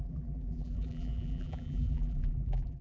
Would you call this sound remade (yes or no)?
yes